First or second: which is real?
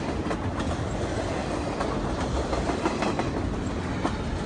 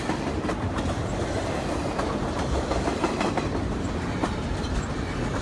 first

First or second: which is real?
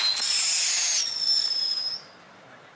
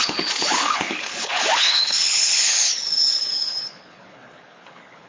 first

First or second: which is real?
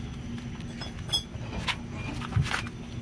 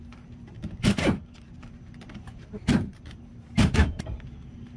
first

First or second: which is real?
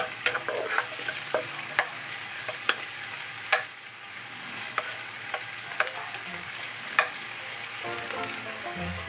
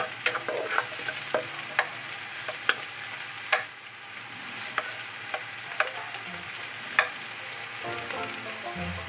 second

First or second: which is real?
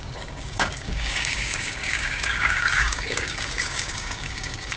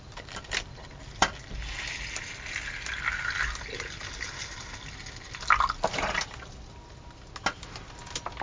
second